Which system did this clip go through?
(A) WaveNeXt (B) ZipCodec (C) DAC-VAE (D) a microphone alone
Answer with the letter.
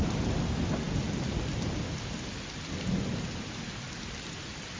D